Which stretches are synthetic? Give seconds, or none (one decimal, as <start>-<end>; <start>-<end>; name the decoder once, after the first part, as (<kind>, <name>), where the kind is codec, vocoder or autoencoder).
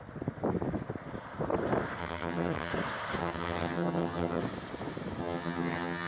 2.0-2.7 (vocoder, HiFi-GAN); 3.2-4.4; 5.2-6.1